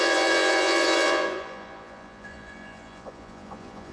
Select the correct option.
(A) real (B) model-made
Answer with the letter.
B